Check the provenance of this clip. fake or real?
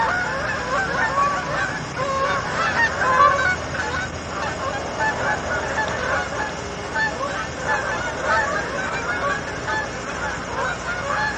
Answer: real